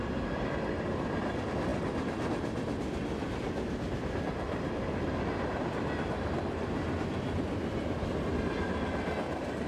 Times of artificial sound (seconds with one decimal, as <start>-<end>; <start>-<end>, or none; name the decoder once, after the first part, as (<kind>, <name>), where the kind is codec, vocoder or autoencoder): none